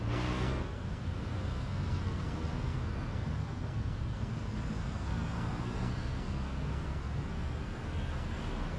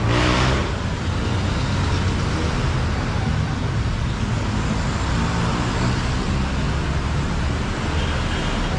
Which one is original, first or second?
second